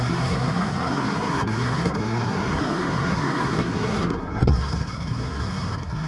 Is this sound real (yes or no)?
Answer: no